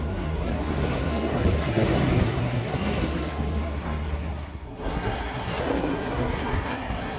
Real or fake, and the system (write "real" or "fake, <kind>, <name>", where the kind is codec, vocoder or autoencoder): fake, codec, SNAC